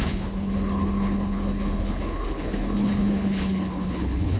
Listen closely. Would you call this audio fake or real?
fake